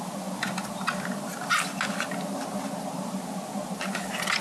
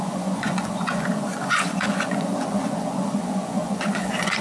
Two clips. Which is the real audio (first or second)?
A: first